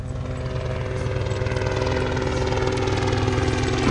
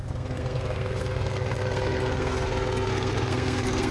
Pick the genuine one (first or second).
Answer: first